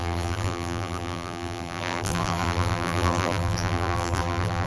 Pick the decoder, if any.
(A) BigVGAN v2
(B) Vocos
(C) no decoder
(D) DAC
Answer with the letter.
A